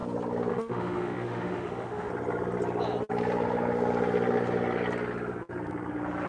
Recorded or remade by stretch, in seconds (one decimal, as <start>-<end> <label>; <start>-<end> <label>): 0.0-0.5 recorded; 0.5-2.1 remade; 2.1-6.3 recorded